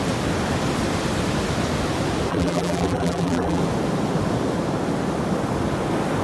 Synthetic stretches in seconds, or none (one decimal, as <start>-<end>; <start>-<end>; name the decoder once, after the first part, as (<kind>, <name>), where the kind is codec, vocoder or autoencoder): 2.3-3.6 (vocoder, BigVGAN v2)